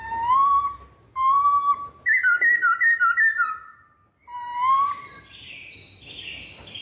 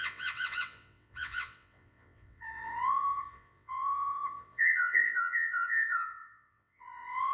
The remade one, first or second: second